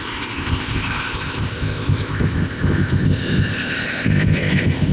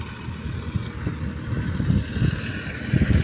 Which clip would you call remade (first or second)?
first